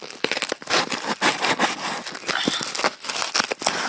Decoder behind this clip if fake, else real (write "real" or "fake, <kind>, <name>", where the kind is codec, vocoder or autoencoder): real